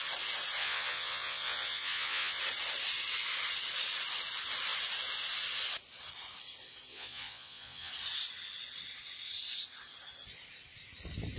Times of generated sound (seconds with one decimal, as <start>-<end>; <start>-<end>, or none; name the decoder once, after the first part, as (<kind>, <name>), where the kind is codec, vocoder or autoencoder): 0.6-2.4 (vocoder, Vocos); 6.9-7.9

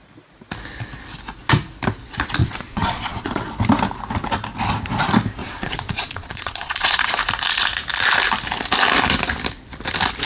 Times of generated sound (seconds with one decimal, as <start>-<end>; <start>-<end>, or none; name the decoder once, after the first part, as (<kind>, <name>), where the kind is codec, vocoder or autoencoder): 2.4-3.4 (vocoder, Vocos); 5.4-7.2

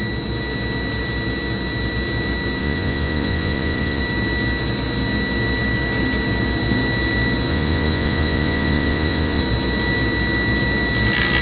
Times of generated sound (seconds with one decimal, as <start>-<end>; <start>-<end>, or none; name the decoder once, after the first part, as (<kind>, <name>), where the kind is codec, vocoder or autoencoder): 2.6-4.0 (vocoder, Vocos); 7.5-9.4

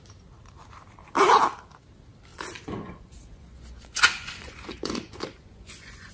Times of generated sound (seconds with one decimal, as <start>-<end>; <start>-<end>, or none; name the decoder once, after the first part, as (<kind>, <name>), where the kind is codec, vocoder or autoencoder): 2.3-6.1 (vocoder, Vocos)